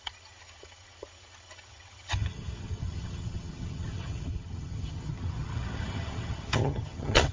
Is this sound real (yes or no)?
no